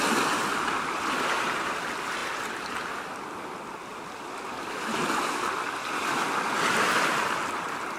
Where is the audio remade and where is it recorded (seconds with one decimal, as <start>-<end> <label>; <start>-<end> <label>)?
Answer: 0.0-8.0 recorded